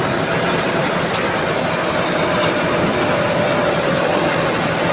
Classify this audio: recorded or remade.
recorded